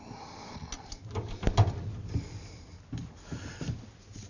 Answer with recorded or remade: recorded